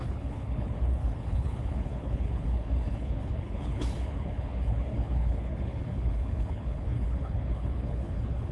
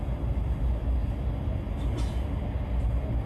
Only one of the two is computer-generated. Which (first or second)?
first